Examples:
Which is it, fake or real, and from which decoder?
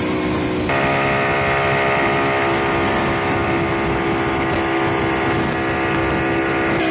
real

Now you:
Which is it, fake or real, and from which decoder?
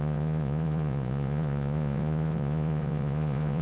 fake, vocoder, Vocos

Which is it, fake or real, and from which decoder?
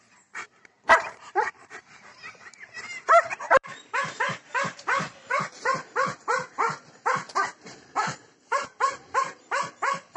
fake, vocoder, BigVGAN v2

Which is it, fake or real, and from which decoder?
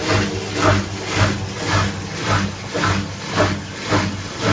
real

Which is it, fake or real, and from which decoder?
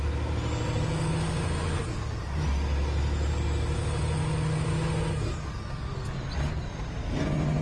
real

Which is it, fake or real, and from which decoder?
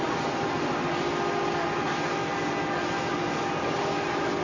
real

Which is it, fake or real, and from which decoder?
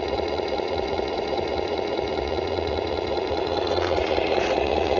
fake, vocoder, Vocos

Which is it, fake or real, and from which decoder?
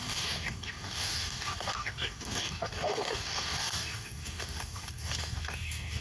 fake, codec, DAC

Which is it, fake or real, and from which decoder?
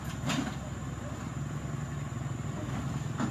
real